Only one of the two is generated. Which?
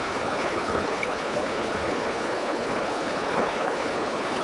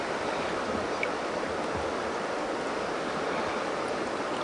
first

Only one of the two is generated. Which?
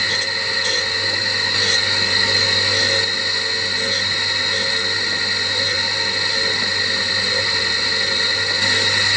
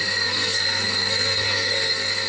second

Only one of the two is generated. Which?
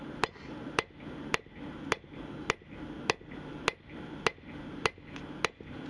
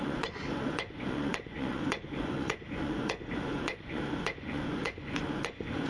second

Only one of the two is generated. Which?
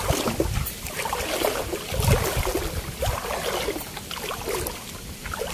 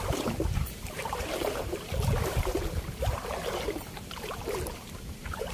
second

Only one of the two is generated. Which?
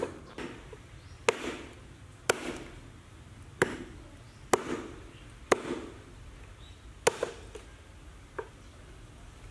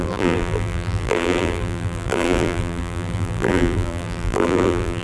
second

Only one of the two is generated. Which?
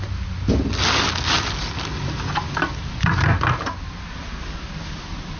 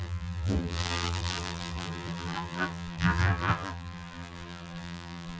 second